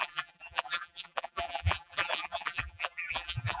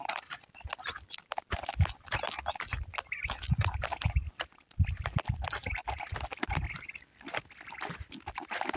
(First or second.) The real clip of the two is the second